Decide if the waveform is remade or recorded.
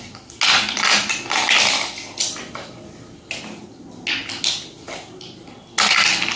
recorded